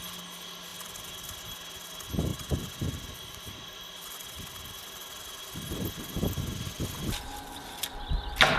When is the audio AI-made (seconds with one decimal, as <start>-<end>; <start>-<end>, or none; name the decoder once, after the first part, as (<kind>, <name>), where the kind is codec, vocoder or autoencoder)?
2.3-5.0 (vocoder, BigVGAN v2)